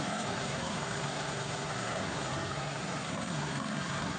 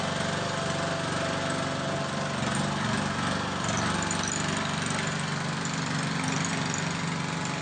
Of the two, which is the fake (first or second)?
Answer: first